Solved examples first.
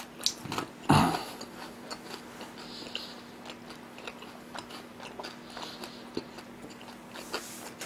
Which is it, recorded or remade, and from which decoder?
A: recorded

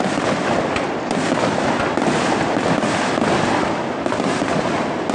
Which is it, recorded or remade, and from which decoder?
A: recorded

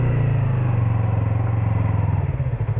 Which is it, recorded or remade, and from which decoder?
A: recorded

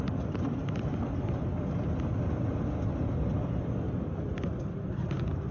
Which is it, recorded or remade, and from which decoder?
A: recorded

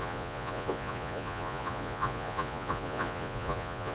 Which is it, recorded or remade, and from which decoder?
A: remade, vocoder, Vocos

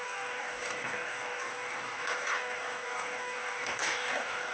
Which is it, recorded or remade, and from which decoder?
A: remade, codec, DAC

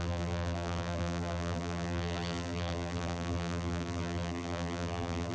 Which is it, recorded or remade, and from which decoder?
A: remade, vocoder, BigVGAN v2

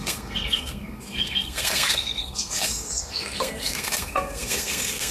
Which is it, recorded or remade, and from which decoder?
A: remade, codec, SNAC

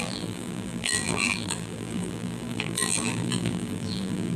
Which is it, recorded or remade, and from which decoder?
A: remade, vocoder, BigVGAN v2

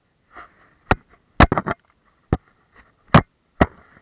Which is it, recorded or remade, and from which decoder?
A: recorded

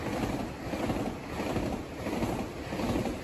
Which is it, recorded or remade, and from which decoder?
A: recorded